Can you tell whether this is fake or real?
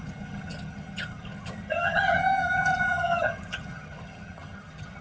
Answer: fake